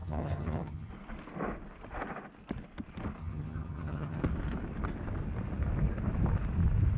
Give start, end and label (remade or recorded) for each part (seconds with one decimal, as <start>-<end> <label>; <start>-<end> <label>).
0.0-0.9 remade; 0.9-3.2 recorded; 3.2-4.2 remade; 4.2-7.0 recorded